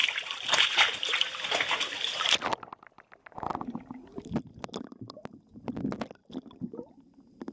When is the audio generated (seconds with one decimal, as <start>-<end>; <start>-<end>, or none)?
none